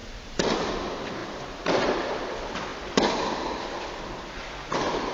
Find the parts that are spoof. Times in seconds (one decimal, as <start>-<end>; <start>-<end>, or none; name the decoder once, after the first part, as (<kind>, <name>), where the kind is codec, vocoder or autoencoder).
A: 0.0-0.7 (vocoder, BigVGAN v2); 2.7-4.0